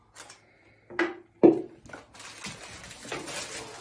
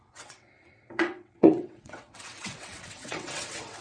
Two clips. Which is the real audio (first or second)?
first